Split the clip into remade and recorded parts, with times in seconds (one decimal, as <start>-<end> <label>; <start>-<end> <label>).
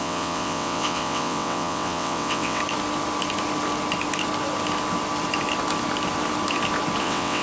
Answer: 0.0-2.6 remade; 2.6-7.0 recorded; 7.0-7.4 remade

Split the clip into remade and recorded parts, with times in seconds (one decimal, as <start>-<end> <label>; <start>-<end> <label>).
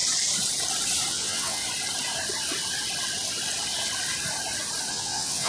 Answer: 0.0-1.1 recorded; 1.1-1.6 remade; 1.6-4.9 recorded; 4.9-5.5 remade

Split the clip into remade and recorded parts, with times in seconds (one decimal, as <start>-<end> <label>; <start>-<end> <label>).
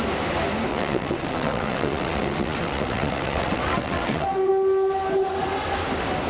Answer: 0.0-0.7 recorded; 0.7-4.5 remade; 4.5-6.3 recorded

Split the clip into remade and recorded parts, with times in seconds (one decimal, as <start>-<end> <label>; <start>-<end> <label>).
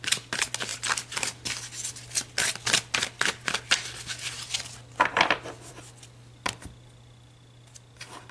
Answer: 0.0-8.3 recorded